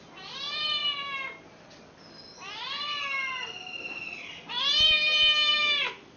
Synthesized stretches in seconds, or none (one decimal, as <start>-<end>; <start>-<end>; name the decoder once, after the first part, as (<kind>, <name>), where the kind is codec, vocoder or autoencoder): 5.6-6.2 (vocoder, BigVGAN v2)